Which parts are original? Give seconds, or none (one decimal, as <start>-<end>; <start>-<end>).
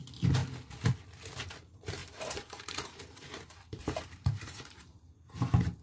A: 0.0-2.0; 5.1-5.8